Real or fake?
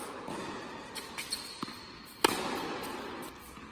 real